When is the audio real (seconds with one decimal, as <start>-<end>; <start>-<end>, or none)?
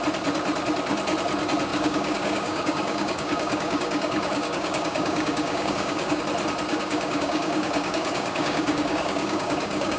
0.0-1.7; 6.2-6.7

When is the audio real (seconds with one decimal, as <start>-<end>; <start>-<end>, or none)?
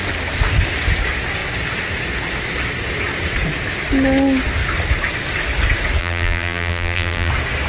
0.0-6.0; 7.3-7.7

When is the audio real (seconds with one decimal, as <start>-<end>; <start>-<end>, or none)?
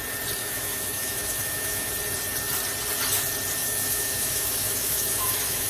0.0-0.4; 1.9-3.6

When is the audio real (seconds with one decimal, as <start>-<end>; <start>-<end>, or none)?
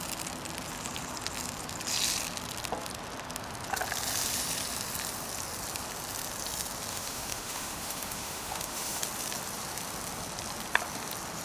0.0-6.9; 9.0-11.4